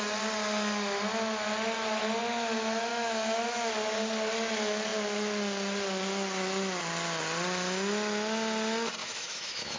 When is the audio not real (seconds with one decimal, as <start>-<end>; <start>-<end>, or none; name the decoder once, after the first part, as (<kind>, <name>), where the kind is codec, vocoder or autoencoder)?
2.9-3.7 (autoencoder, DAC-VAE); 9.0-9.8